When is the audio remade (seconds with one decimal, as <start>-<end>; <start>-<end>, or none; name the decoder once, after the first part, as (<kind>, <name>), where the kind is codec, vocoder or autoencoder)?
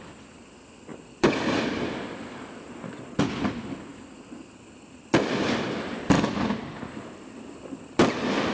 0.9-3.2 (vocoder, BigVGAN v2); 3.9-8.1